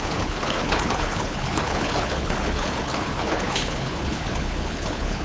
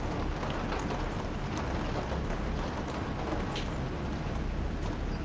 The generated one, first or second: first